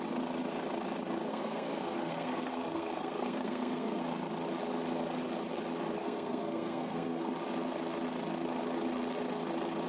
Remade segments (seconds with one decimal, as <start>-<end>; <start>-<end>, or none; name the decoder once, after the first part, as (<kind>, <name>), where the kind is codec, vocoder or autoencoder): 1.3-4.0 (codec, SNAC); 6.0-7.3